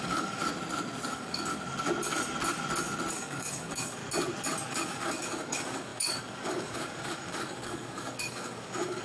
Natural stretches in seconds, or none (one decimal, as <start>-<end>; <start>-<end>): 0.4-1.1; 1.5-3.1; 4.0-4.7